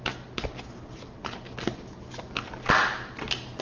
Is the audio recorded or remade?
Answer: recorded